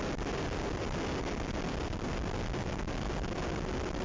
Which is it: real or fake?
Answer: real